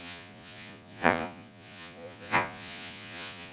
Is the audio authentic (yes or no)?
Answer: no